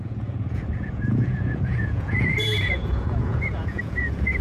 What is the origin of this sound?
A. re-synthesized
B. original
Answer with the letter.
A